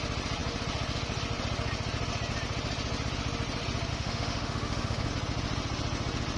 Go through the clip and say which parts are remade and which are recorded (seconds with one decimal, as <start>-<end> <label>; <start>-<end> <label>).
0.0-3.9 recorded; 3.9-5.1 remade; 5.1-6.4 recorded